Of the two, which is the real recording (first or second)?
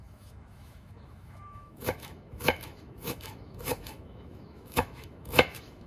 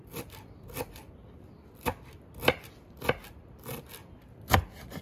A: second